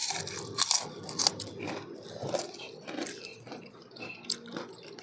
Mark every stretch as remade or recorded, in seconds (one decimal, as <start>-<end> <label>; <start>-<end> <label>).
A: 0.0-3.3 recorded; 3.3-4.0 remade; 4.0-5.0 recorded